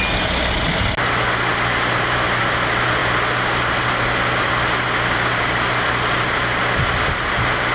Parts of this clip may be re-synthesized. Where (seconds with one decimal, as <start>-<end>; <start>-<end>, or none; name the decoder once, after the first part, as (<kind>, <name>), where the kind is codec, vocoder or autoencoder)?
none